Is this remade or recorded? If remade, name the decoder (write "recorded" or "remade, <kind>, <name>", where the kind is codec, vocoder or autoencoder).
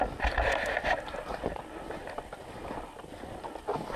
recorded